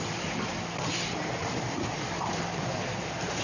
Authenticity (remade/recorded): recorded